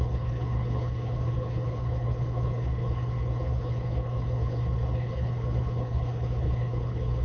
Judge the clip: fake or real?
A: fake